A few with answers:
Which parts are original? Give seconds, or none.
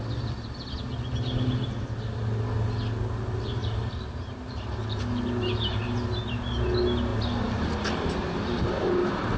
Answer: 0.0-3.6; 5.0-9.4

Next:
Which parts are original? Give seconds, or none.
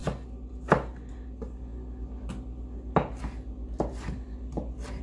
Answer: 0.0-5.0